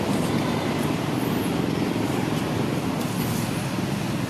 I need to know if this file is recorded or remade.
recorded